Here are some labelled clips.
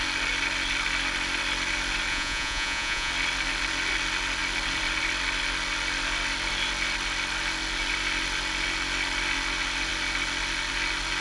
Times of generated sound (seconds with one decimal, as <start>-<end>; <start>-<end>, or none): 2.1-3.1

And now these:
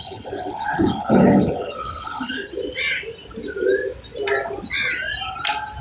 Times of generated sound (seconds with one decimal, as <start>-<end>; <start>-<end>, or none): 0.0-2.5

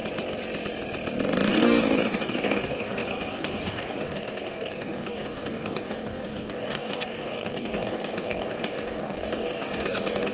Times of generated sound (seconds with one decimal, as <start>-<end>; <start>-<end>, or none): 1.5-10.3

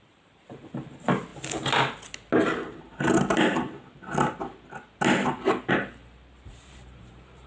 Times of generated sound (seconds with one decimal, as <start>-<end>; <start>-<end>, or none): 0.0-1.3; 5.7-7.5